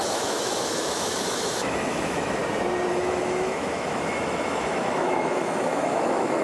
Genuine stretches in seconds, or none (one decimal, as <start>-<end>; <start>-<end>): 2.4-2.9